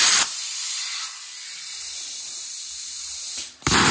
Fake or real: real